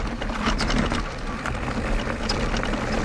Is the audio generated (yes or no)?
no